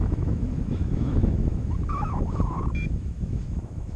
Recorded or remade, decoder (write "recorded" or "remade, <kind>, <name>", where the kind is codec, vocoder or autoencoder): remade, autoencoder, DAC-VAE